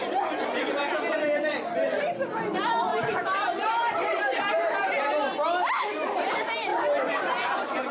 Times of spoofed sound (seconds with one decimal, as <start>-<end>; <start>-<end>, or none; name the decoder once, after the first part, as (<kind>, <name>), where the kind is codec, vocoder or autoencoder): 2.9-4.4 (vocoder, BigVGAN v2)